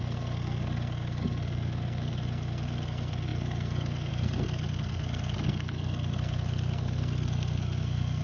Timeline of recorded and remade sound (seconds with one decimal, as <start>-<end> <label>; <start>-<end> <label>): 0.0-8.2 remade